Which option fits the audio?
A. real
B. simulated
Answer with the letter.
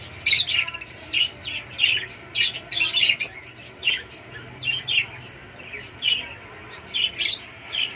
A